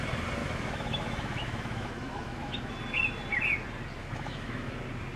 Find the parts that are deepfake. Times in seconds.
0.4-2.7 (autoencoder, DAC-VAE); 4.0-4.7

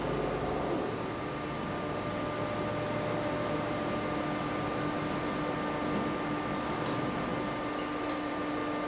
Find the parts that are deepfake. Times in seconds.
none